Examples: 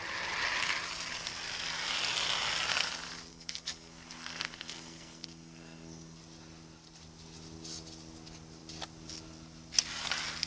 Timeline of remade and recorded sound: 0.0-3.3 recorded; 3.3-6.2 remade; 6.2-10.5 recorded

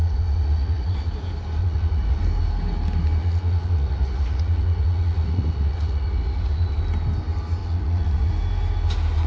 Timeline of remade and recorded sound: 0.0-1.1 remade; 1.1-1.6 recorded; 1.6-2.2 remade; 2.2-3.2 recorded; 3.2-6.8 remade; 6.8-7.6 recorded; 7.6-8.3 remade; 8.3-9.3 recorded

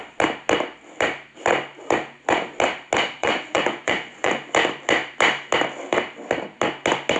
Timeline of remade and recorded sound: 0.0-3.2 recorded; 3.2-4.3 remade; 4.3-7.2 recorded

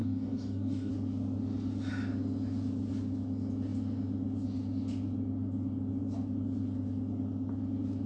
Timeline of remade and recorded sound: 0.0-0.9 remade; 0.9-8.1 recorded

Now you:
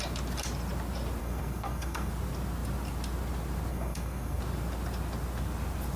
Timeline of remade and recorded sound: 0.0-1.2 recorded; 1.2-2.1 remade; 2.1-3.7 recorded; 3.7-4.4 remade; 4.4-6.0 recorded

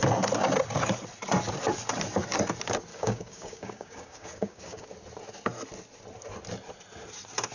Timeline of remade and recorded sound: 0.0-2.9 recorded; 2.9-4.9 remade; 4.9-7.5 recorded

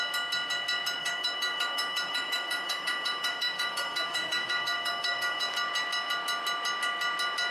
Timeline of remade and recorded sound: 0.0-1.0 recorded; 1.0-5.5 remade; 5.5-7.5 recorded